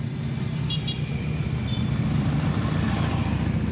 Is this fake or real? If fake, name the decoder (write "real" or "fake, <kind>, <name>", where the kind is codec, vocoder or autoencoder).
real